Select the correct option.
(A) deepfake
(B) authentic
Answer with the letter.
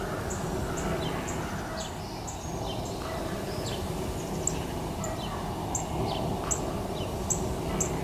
B